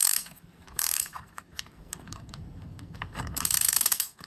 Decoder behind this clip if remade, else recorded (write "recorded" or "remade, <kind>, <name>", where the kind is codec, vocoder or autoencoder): remade, codec, SNAC